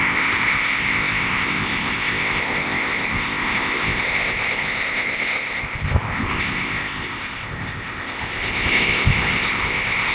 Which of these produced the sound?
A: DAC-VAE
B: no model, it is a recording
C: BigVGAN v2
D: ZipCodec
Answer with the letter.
D